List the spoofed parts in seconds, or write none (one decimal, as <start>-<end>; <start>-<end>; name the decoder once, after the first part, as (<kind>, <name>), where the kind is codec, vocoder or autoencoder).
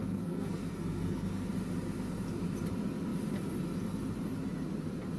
0.0-1.5 (codec, SNAC)